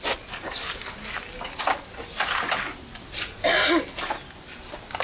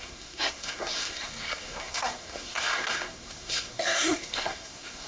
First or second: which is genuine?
first